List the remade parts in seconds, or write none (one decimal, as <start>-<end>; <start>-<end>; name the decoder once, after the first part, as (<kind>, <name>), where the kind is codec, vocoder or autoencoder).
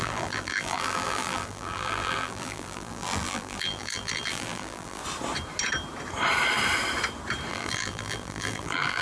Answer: 0.0-5.0 (vocoder, BigVGAN v2); 7.5-9.0